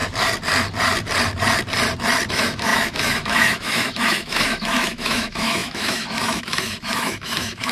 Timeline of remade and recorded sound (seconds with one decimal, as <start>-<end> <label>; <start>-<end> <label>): 0.0-2.3 recorded; 2.3-7.7 remade